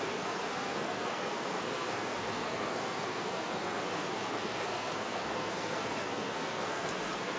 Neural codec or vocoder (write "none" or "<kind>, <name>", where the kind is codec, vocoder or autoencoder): codec, SNAC